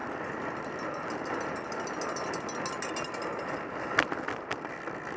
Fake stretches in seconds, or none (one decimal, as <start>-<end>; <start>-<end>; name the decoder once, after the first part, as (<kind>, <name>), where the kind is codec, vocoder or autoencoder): none